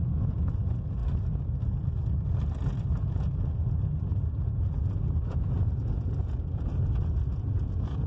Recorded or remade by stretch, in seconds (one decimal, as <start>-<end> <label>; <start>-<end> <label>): 0.0-1.0 remade; 1.0-2.9 recorded; 2.9-8.1 remade